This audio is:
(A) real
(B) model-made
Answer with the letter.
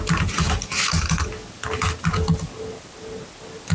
A